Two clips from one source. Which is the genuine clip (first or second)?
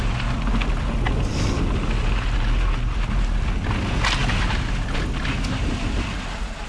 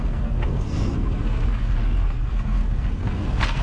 first